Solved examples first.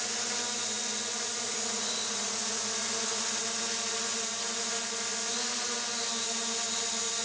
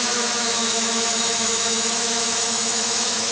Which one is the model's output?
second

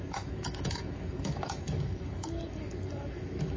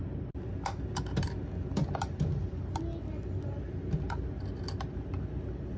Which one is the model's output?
first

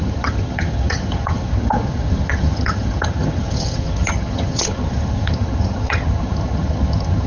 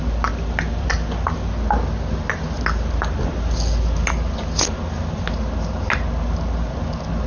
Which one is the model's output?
first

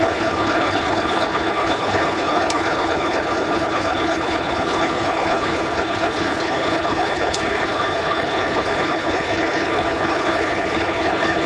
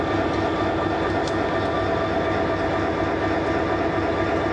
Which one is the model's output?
first